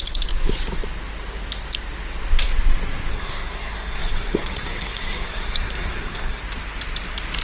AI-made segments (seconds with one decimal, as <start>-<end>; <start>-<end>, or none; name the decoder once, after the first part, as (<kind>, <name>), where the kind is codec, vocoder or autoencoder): 3.1-6.4 (codec, SNAC)